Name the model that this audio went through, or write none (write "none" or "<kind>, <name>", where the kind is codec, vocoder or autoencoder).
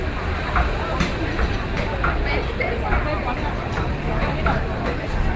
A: none